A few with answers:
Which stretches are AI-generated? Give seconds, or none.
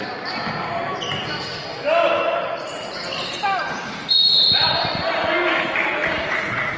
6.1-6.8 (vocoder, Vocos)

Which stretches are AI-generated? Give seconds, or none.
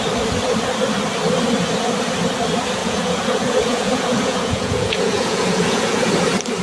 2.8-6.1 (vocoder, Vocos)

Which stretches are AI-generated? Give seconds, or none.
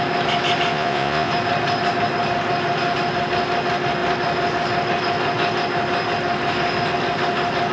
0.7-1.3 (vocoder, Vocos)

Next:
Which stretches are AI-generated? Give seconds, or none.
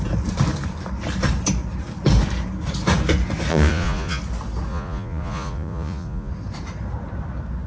3.5-4.2 (vocoder, Vocos); 4.7-6.3